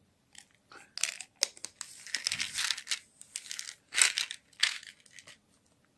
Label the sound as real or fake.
real